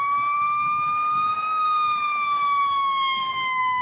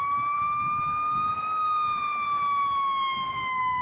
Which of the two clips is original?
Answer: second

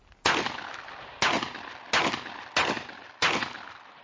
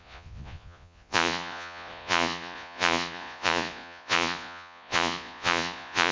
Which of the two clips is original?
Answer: first